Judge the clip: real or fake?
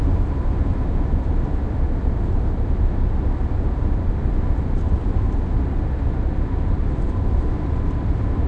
fake